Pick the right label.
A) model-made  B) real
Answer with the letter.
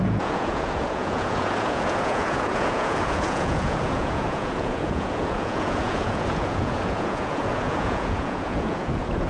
A